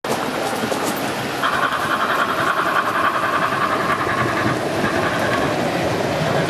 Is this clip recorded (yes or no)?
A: yes